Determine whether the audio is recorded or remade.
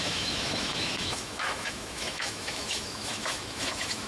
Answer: remade